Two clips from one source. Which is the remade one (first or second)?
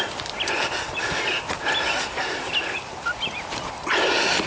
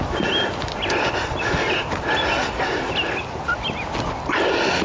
first